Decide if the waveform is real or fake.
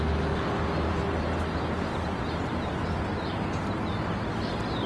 real